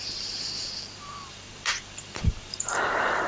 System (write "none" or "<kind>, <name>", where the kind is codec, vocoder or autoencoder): vocoder, BigVGAN v2